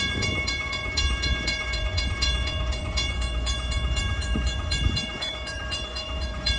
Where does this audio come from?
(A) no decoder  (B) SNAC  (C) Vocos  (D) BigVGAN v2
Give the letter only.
C